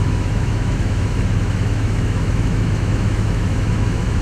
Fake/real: fake